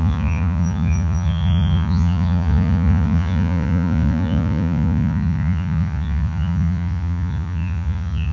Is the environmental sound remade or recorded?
remade